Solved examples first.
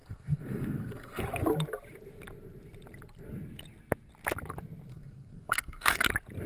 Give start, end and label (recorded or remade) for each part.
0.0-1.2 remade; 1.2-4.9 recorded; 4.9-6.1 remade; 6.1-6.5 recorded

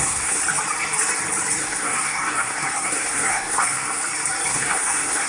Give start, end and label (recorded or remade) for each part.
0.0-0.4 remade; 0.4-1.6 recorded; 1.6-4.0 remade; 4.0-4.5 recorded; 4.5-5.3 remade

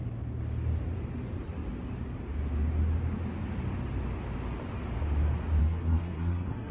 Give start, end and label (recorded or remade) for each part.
0.0-5.6 recorded; 5.6-6.7 remade

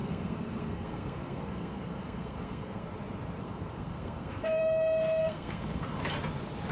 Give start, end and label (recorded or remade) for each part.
0.0-2.9 remade; 2.9-3.4 recorded; 3.4-4.6 remade; 4.6-5.2 recorded; 5.2-6.0 remade; 6.0-6.7 recorded

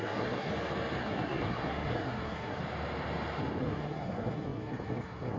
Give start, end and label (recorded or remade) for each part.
0.0-0.5 remade; 0.5-1.0 recorded; 1.0-2.6 remade; 2.6-3.6 recorded; 3.6-5.4 remade

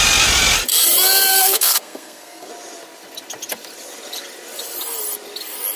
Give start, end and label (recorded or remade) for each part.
0.0-1.3 recorded; 1.3-2.5 remade; 2.5-5.8 recorded

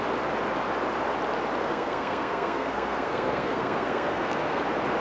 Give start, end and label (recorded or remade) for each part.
0.0-1.6 recorded; 1.6-4.6 remade; 4.6-5.0 recorded